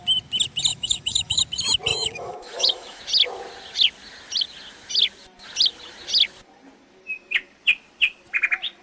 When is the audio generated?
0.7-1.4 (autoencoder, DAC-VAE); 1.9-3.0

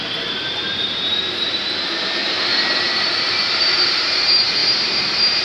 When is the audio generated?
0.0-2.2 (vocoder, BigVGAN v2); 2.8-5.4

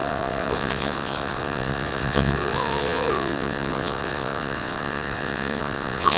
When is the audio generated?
0.0-6.2 (vocoder, WaveNeXt)